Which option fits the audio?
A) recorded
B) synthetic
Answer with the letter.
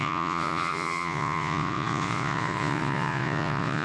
B